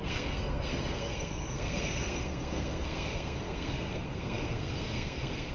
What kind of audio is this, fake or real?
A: fake